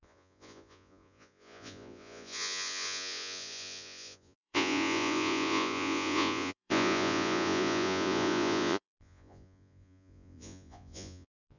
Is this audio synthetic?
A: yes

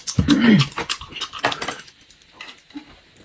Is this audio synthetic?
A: no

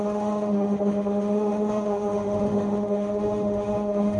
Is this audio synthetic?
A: yes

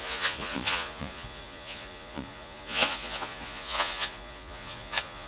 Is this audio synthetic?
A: yes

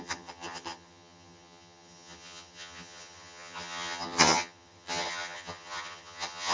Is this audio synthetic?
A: yes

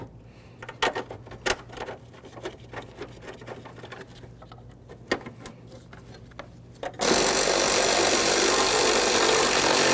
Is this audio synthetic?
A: no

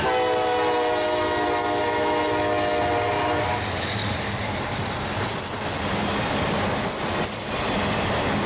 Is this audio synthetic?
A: no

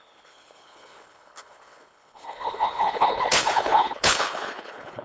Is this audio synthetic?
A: yes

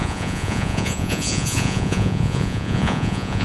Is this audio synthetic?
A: yes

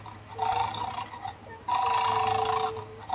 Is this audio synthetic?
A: no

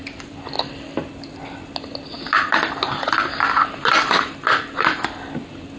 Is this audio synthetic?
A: no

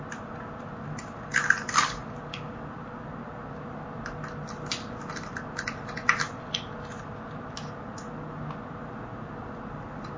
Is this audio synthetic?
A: no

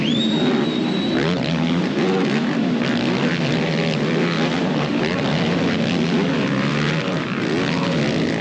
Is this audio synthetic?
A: no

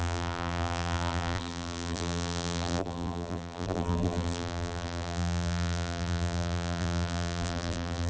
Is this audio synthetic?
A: yes